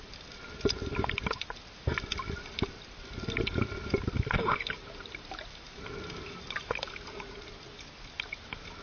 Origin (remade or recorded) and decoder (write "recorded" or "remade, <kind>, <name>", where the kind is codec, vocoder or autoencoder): recorded